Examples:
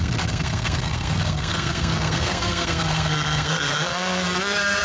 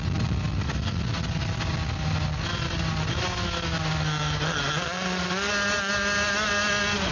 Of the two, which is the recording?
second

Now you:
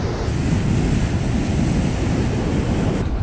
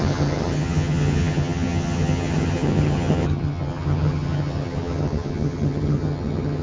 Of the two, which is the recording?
first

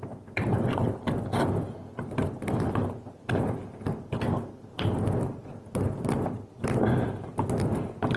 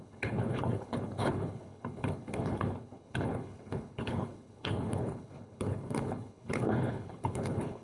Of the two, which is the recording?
first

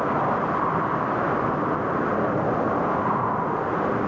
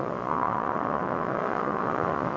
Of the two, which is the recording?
first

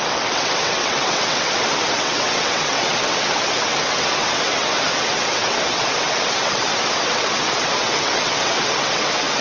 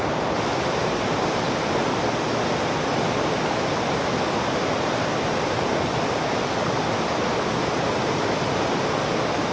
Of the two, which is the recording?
second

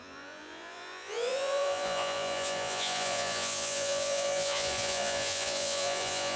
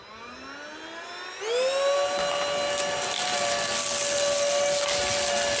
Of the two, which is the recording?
second